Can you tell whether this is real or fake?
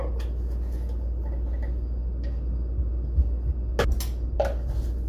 real